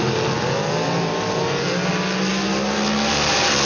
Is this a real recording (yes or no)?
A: yes